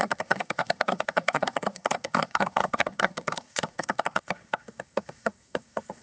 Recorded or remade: remade